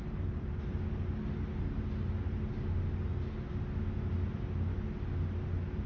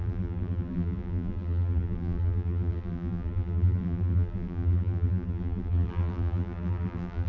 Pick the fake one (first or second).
second